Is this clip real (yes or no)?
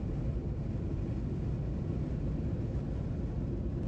yes